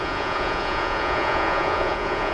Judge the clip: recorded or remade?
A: remade